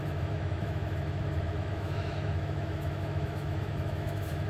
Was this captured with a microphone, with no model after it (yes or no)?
no